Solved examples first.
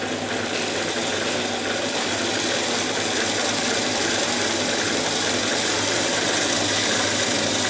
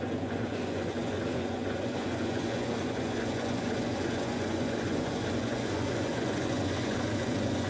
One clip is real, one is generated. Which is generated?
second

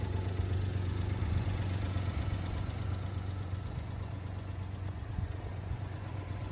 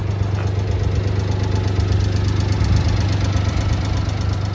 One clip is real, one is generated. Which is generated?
first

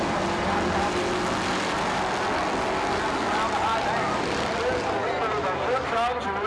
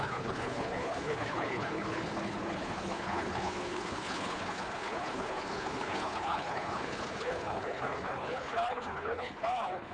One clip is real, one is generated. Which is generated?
second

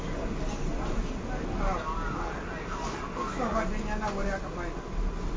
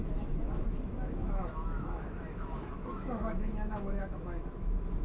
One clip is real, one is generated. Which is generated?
second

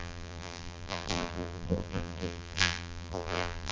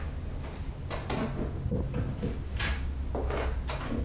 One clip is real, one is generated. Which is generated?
first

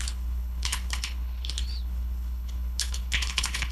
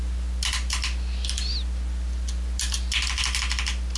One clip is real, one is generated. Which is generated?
first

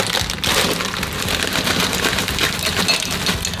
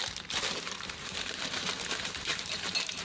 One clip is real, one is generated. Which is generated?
second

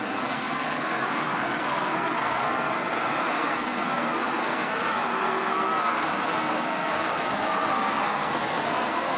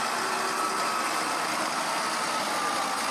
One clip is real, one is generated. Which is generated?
first